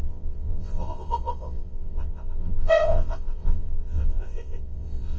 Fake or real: fake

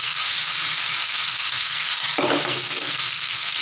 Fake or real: fake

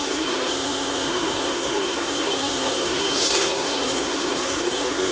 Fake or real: fake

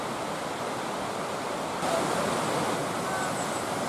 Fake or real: real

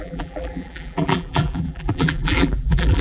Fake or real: fake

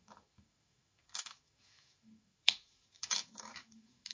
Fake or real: fake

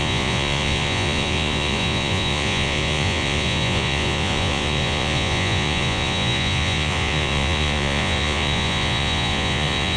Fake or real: fake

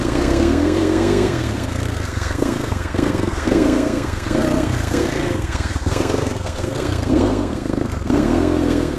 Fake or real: fake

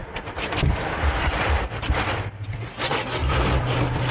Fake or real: fake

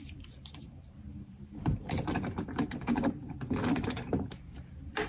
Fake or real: fake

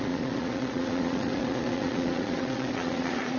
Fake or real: fake